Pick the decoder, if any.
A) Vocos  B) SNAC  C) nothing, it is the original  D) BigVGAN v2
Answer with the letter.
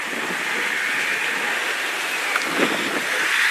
C